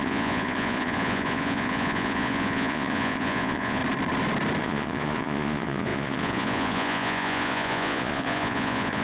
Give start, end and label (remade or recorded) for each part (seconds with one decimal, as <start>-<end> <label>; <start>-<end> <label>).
0.0-3.8 remade; 3.8-4.6 recorded; 4.6-9.0 remade